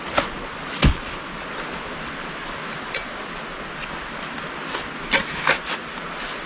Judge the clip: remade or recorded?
recorded